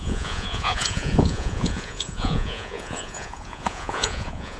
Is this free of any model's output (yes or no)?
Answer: no